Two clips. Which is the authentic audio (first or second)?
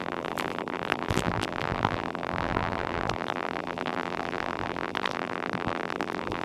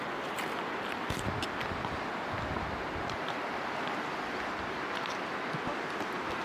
second